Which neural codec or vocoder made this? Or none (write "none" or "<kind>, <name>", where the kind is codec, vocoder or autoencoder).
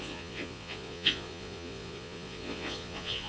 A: vocoder, Vocos